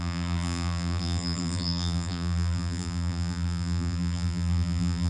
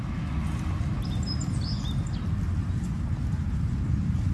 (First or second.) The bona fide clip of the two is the second